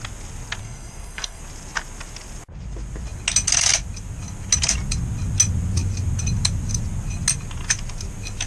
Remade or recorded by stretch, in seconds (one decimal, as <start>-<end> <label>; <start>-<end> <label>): 0.0-0.6 recorded; 0.6-1.4 remade; 1.4-8.5 recorded